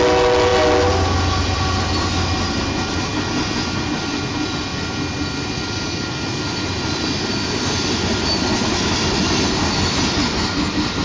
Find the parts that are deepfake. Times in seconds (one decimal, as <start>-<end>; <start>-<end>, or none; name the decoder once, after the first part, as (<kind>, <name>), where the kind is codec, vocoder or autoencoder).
none